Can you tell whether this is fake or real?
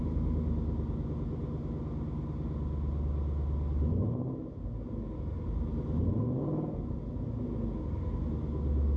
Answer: real